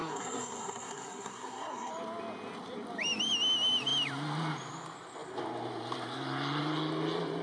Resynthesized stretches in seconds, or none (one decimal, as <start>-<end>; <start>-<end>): 0.0-1.9